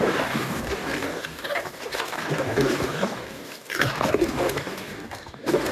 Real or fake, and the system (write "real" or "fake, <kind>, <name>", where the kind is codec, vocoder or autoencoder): fake, codec, DAC